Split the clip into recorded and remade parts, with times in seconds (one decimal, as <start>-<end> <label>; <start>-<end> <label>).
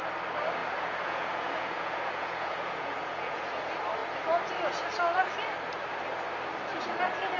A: 0.0-0.6 recorded; 0.6-3.6 remade; 3.6-7.4 recorded